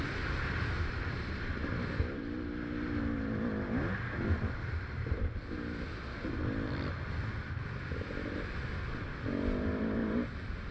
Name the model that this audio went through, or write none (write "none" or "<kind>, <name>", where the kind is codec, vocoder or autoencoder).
none